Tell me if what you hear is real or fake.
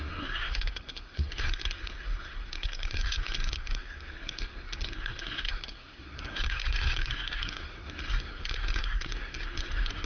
fake